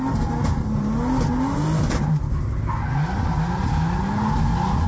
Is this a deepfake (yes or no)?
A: no